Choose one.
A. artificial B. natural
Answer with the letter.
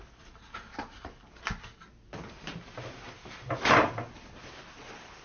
B